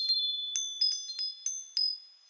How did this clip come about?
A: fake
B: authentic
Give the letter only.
B